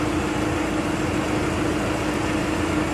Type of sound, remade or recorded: recorded